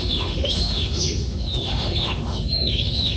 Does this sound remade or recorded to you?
remade